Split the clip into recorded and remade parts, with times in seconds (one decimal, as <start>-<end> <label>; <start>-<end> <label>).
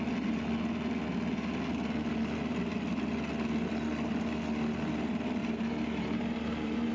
0.0-5.4 recorded; 5.4-6.9 remade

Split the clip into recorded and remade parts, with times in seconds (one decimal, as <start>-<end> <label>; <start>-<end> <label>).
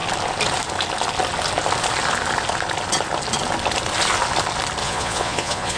0.0-4.8 recorded; 4.8-5.8 remade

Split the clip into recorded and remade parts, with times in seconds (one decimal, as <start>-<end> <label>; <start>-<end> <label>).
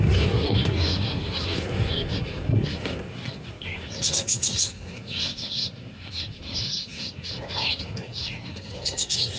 0.0-9.4 remade